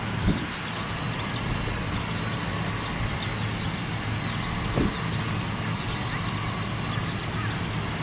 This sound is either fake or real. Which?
real